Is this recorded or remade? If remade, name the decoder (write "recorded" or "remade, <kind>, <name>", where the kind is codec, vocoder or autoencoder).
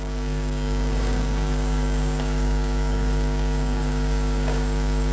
remade, codec, DAC